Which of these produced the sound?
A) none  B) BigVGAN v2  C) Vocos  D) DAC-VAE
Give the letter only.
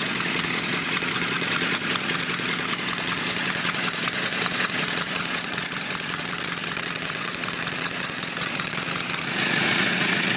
C